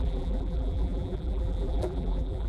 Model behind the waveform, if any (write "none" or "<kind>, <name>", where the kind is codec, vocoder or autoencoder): vocoder, BigVGAN v2